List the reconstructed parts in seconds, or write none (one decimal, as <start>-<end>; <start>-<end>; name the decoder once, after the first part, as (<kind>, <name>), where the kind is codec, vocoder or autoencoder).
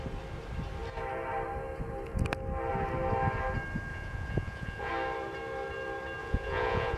3.9-4.9 (vocoder, Vocos); 6.2-7.0